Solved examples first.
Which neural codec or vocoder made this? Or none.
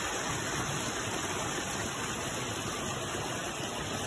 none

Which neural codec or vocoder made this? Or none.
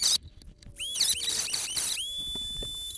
none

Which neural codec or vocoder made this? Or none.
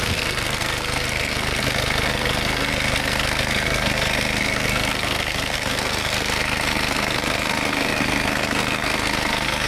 codec, SNAC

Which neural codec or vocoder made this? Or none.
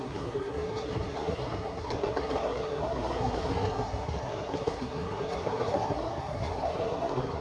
codec, SNAC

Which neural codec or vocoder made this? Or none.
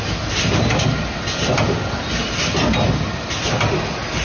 none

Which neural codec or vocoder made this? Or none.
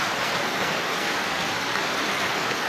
codec, SNAC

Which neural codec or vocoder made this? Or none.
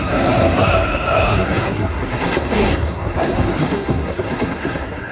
codec, SNAC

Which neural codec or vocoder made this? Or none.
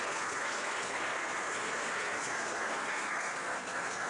codec, SNAC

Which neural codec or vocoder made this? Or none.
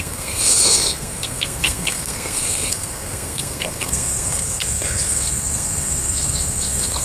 codec, SNAC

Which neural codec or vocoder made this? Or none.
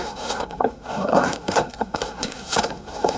codec, SNAC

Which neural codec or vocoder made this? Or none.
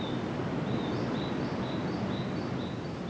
none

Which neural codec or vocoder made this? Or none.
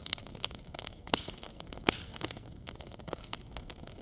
codec, SNAC